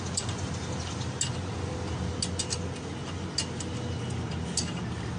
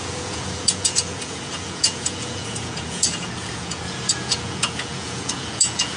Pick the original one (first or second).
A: first